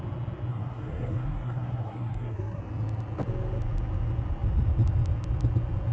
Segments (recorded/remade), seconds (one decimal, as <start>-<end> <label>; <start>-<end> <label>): 0.0-0.5 recorded; 0.5-2.6 remade; 2.6-5.9 recorded